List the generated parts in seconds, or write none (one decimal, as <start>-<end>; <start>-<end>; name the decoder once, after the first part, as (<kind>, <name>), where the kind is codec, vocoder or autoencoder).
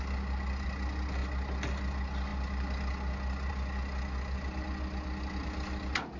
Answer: none